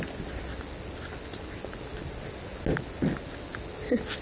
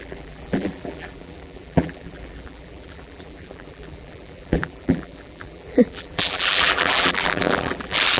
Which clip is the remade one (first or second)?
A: second